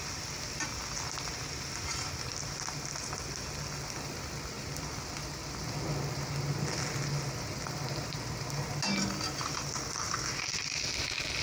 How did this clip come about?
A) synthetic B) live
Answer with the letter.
B